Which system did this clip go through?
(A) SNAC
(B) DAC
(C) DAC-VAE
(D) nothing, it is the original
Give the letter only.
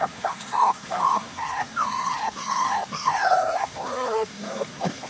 A